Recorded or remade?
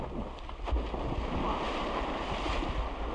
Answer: recorded